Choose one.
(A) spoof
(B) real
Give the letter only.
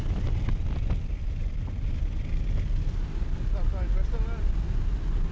B